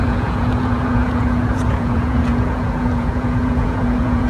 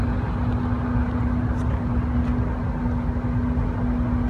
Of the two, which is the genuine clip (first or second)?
second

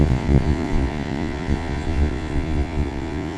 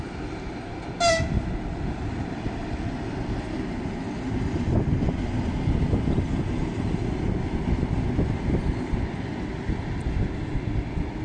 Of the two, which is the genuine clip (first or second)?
second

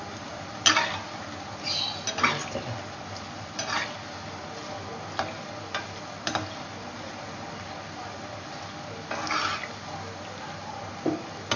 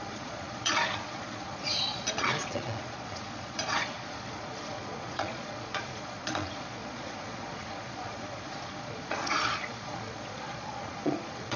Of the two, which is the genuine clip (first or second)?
first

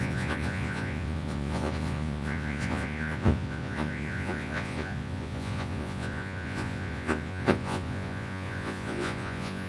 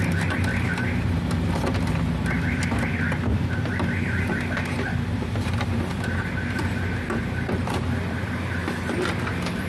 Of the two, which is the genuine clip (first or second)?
second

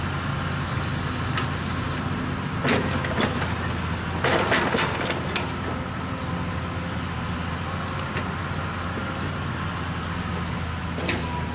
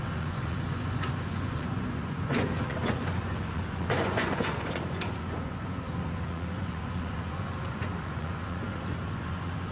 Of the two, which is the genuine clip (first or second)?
first